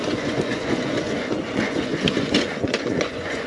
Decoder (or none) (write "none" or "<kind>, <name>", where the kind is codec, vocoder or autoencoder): vocoder, Vocos